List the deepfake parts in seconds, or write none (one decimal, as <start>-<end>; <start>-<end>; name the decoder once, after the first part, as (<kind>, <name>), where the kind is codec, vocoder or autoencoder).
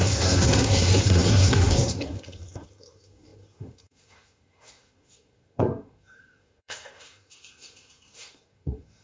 0.0-9.0 (codec, SNAC)